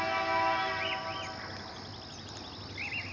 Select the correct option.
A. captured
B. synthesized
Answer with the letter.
A